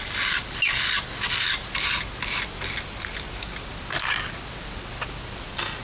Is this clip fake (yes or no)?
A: no